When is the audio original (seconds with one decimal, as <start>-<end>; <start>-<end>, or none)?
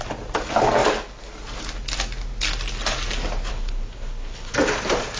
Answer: 0.0-3.5; 4.5-5.2